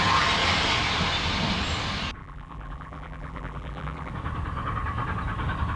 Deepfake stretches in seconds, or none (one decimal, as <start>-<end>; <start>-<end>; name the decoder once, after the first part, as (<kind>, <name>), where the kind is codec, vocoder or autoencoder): 2.2-4.1 (vocoder, BigVGAN v2)